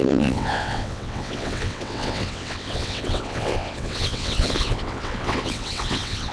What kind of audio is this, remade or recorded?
remade